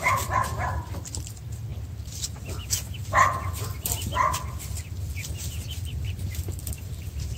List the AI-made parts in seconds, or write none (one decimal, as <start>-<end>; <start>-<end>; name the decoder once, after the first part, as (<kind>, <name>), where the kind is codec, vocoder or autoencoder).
0.0-1.7 (vocoder, BigVGAN v2); 2.9-7.4